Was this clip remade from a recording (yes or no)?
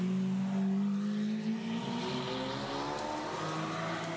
no